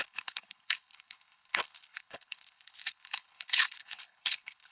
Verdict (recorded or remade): remade